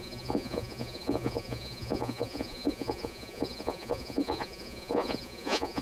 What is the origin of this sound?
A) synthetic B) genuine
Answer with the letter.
A